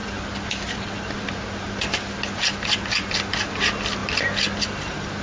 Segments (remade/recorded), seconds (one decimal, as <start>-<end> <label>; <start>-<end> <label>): 0.0-5.2 recorded